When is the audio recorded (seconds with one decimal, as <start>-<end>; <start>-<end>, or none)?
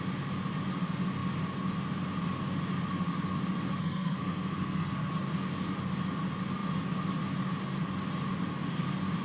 0.0-3.8; 5.1-9.2